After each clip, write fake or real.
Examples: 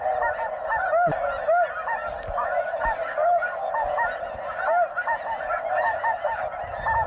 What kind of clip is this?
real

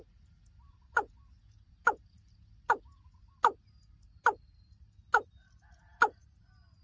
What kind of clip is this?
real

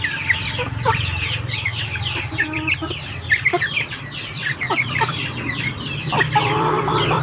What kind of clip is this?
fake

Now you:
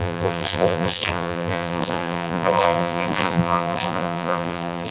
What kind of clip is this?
fake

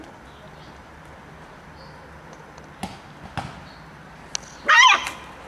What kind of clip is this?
real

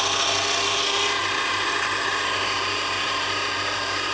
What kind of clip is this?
real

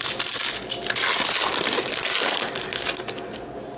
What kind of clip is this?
real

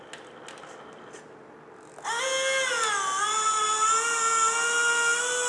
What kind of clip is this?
real